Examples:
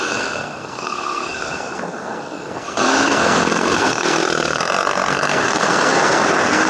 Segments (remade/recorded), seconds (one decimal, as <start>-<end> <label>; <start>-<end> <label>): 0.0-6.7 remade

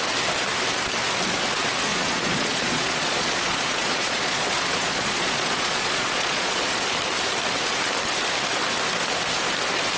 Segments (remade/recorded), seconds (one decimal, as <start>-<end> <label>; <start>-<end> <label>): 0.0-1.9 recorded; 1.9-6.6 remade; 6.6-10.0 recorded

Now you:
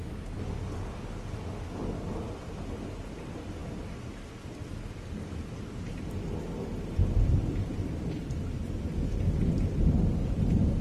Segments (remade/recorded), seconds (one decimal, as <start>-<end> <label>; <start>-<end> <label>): 0.0-10.8 recorded